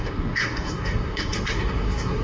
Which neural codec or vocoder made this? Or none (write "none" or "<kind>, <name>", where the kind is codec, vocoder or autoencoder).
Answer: codec, SNAC